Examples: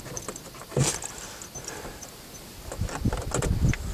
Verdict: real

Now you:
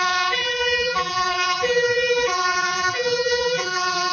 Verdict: fake